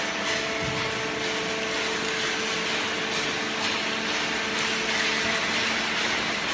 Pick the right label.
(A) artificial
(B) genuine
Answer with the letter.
B